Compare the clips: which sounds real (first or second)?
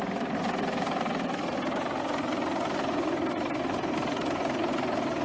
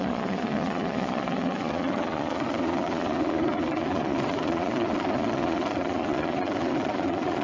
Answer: first